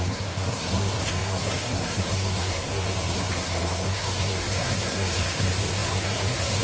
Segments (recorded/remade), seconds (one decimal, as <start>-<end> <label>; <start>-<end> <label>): 0.0-6.6 remade